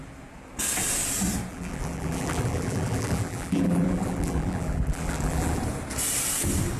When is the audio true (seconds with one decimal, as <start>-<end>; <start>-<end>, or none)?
0.0-1.5; 5.6-6.8